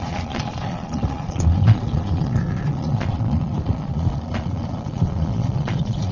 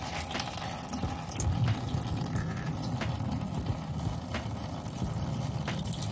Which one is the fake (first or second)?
first